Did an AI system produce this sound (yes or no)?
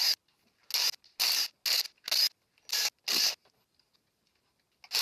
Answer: no